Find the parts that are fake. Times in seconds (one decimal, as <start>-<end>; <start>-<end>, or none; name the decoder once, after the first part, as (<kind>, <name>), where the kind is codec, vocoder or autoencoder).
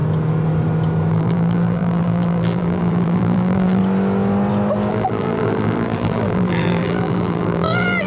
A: 1.1-3.8 (vocoder, BigVGAN v2); 4.9-8.1